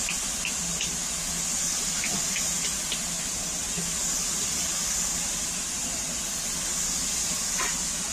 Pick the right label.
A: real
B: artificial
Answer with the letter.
A